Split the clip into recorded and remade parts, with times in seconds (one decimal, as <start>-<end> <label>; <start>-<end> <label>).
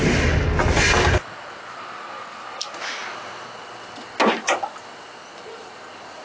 0.0-6.2 recorded